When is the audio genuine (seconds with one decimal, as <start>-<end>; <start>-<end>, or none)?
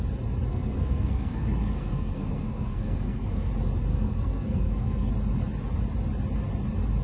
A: 0.0-0.5; 3.5-3.9; 5.1-7.0